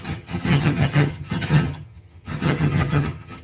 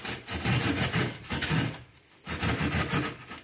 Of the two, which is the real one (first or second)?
second